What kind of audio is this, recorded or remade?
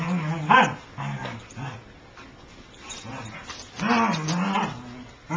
recorded